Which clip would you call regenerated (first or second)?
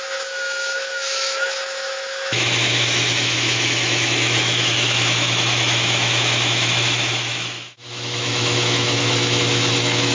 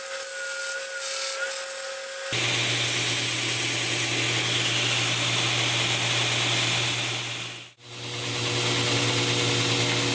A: first